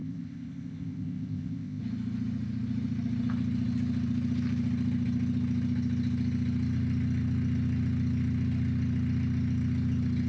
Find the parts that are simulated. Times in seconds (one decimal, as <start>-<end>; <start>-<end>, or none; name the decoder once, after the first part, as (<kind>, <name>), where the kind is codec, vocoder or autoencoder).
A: 0.0-1.8 (codec, ZipCodec)